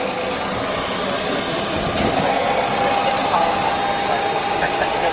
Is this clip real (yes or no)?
yes